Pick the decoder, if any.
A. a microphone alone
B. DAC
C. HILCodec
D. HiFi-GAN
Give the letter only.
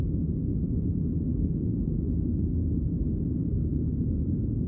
A